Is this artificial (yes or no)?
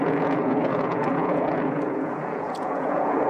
yes